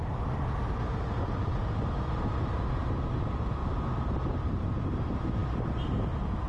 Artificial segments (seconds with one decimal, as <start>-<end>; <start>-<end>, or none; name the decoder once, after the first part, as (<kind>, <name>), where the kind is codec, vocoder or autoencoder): 1.0-2.8 (vocoder, BigVGAN v2); 3.6-5.0